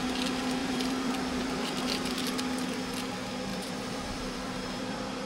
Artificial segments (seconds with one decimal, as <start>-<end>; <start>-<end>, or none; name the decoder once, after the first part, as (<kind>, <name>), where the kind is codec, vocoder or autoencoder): 0.6-1.8 (vocoder, BigVGAN v2); 3.5-5.3